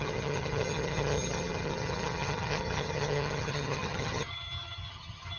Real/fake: fake